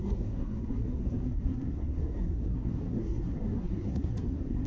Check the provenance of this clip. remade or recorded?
remade